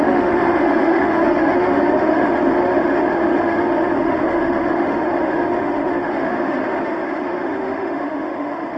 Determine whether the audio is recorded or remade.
remade